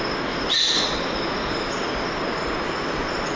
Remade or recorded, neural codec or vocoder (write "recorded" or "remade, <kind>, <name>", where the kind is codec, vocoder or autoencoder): recorded